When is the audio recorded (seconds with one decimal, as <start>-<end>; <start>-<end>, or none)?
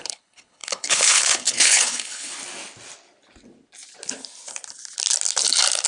2.3-5.9